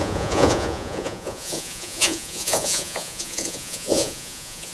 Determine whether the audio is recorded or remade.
remade